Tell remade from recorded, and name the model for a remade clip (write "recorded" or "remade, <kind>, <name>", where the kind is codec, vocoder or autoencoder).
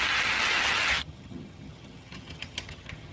remade, vocoder, HiFi-GAN